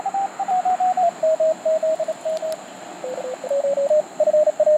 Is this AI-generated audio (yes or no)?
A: no